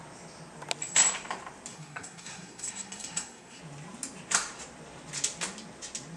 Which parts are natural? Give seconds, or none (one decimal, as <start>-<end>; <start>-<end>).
0.0-1.7; 3.6-6.2